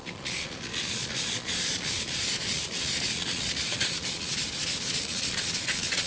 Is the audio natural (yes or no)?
no